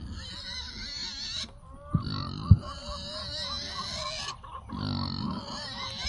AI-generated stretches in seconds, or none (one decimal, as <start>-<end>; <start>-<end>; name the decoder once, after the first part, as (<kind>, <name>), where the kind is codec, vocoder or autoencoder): none